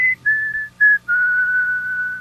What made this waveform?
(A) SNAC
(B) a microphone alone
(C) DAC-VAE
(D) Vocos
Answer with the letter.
B